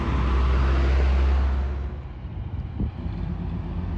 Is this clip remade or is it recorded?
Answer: recorded